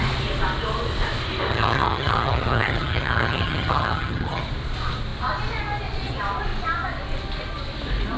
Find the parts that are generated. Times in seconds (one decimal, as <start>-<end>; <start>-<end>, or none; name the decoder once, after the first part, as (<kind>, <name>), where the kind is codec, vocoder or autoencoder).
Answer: 1.5-4.4 (vocoder, HiFi-GAN)